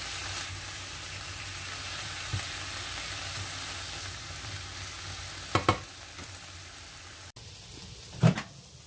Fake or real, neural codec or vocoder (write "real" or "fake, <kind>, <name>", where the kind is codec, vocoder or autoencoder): real